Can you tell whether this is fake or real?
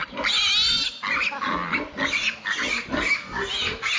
real